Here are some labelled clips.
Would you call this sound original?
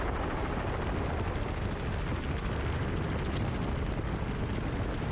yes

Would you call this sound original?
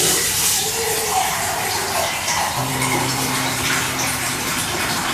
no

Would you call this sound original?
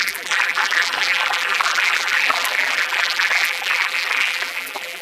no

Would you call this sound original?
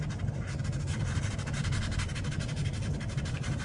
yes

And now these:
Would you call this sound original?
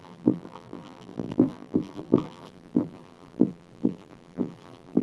no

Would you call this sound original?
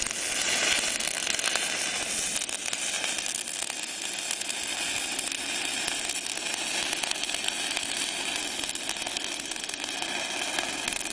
yes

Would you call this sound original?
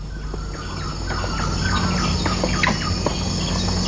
yes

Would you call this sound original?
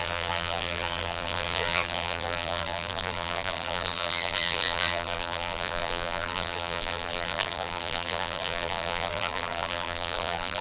no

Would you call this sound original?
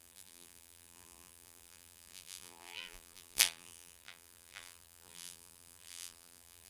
no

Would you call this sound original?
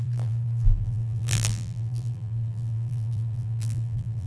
no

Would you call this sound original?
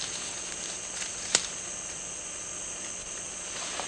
yes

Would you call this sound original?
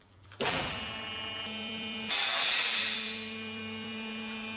no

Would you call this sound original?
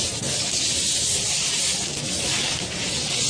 yes